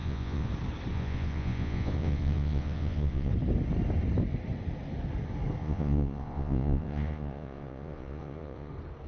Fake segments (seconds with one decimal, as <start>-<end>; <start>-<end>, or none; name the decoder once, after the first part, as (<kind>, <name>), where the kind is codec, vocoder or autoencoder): 0.0-0.5 (vocoder, Vocos); 0.9-3.3; 5.6-8.7